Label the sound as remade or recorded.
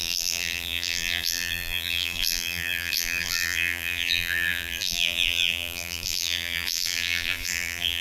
remade